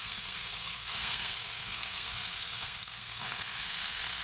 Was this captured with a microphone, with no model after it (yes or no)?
no